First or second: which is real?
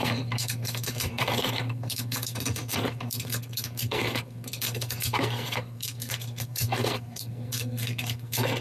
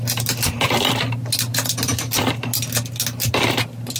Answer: second